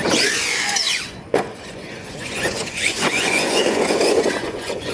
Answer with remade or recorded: remade